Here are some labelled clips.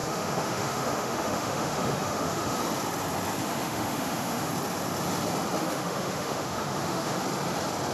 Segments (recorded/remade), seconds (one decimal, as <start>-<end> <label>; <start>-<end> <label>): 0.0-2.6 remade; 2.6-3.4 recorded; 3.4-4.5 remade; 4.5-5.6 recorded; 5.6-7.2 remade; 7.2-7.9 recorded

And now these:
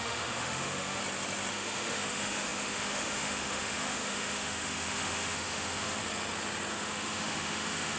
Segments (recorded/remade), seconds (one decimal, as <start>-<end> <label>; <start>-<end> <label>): 0.0-1.0 remade; 1.0-1.5 recorded; 1.5-6.0 remade; 6.0-6.7 recorded; 6.7-8.0 remade

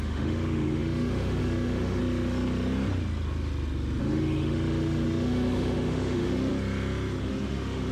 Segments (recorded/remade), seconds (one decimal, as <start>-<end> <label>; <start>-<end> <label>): 0.0-2.0 remade; 2.0-4.0 recorded; 4.0-6.5 remade; 6.5-7.2 recorded; 7.2-7.9 remade